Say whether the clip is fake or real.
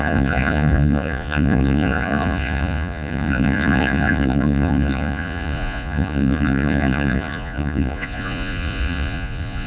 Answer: fake